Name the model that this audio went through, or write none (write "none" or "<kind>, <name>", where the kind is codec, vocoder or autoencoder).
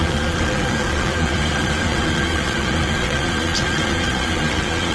vocoder, Vocos